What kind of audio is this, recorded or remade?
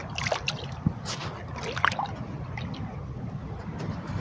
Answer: remade